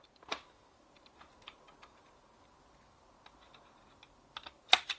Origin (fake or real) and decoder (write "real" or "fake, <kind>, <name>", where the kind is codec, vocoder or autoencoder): real